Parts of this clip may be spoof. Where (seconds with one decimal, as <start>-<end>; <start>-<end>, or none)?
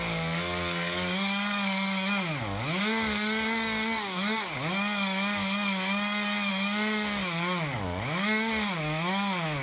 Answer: 0.0-9.6